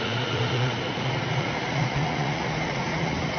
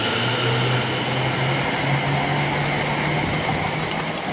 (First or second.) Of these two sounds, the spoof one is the first